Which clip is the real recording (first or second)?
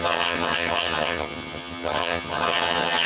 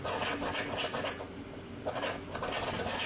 second